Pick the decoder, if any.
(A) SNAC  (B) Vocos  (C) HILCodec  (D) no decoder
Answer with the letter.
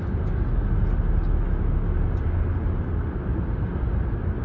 D